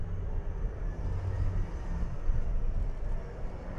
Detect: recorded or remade recorded